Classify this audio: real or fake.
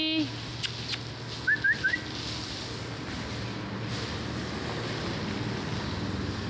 real